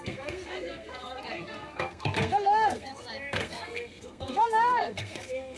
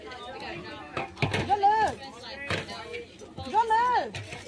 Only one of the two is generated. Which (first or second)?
first